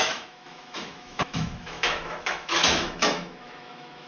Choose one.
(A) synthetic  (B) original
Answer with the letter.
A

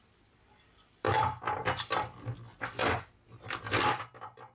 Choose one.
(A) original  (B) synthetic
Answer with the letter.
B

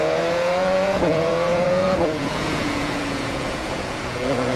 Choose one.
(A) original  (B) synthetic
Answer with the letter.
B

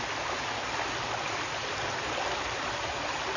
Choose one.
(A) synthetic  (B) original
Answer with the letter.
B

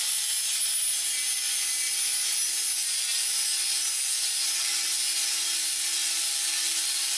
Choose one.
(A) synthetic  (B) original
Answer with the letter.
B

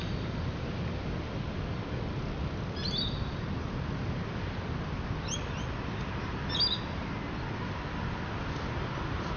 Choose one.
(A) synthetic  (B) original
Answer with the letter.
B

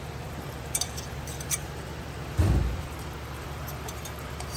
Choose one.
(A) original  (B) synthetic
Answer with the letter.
B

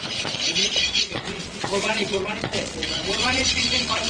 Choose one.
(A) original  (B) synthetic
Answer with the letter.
B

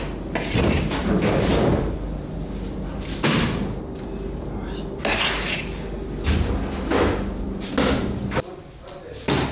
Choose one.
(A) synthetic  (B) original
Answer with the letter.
B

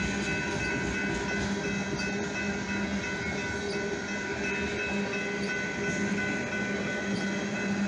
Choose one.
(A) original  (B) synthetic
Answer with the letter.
A